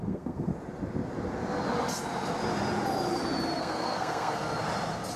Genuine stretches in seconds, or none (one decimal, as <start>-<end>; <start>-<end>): 0.5-3.6; 4.4-5.2